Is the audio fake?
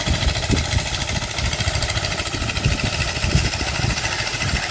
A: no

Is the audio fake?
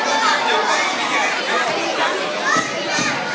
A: no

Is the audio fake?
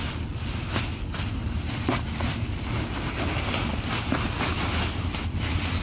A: no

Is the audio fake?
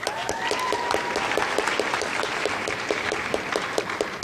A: no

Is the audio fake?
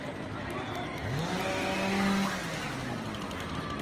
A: no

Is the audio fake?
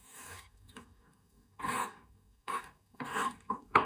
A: yes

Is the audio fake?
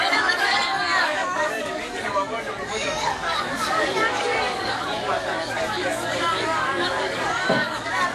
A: yes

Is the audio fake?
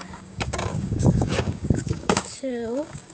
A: yes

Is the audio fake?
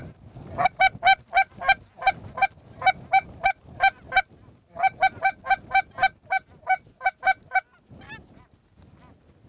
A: no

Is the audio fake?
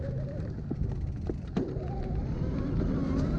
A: no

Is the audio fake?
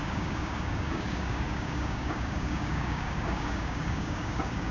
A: yes